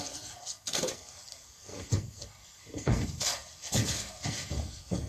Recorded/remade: remade